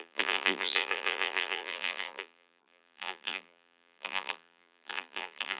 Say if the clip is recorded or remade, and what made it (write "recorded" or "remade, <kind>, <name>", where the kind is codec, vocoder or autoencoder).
remade, vocoder, BigVGAN v2